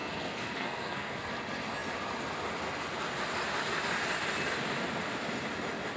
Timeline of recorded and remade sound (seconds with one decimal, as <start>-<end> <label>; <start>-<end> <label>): 0.0-1.3 remade; 1.3-6.0 recorded